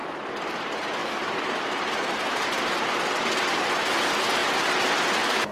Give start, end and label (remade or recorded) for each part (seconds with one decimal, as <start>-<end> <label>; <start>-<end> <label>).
0.0-1.0 recorded; 1.0-2.6 remade; 2.6-5.5 recorded